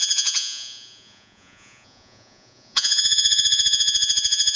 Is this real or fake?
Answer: fake